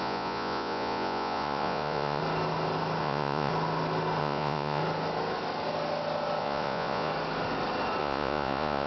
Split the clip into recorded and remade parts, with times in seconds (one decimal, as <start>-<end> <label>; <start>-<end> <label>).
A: 0.0-2.2 remade; 2.2-3.0 recorded; 3.0-3.5 remade; 3.5-4.2 recorded; 4.2-4.8 remade; 4.8-6.4 recorded; 6.4-7.1 remade; 7.1-8.0 recorded; 8.0-8.9 remade